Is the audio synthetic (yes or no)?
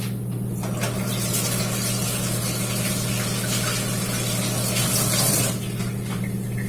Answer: no